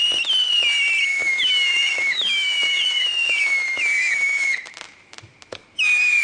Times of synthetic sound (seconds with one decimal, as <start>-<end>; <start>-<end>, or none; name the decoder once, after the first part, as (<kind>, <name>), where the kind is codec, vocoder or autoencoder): 1.1-4.7 (autoencoder, DAC-VAE)